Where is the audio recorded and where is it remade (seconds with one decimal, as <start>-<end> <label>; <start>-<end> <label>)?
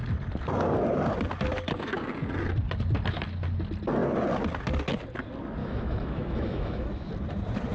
0.0-5.6 recorded; 5.6-7.1 remade; 7.1-7.7 recorded